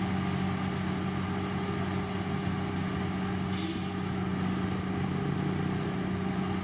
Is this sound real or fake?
real